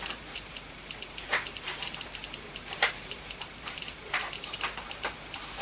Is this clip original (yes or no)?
no